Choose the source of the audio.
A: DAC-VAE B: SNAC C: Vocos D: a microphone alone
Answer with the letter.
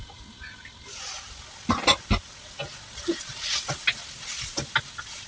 D